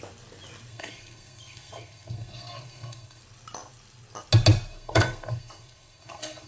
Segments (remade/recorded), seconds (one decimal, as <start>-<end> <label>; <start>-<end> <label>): 0.0-0.7 recorded; 0.7-3.2 remade; 3.2-4.7 recorded; 4.7-6.5 remade